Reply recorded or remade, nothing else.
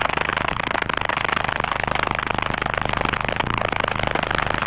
recorded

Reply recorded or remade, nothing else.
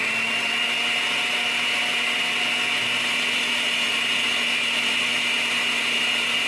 recorded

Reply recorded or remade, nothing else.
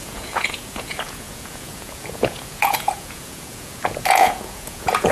remade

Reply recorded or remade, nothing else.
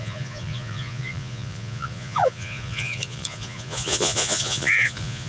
remade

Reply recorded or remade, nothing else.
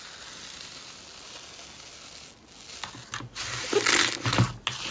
recorded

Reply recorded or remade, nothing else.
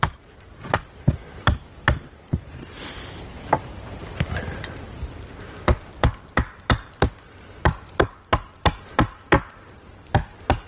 recorded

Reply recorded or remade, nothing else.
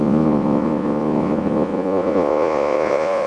remade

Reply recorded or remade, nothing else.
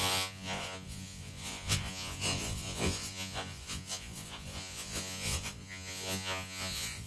remade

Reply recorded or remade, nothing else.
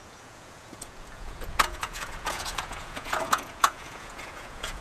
remade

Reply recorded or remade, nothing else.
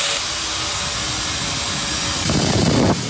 recorded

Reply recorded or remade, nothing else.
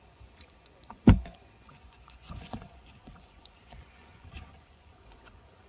remade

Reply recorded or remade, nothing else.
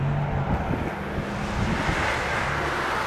recorded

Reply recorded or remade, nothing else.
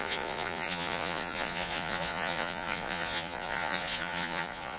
remade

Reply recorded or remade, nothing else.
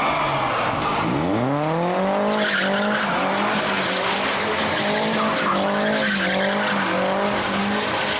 recorded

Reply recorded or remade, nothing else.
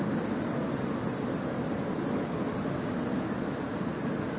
recorded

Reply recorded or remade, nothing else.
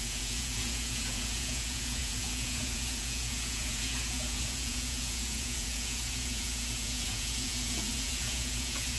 remade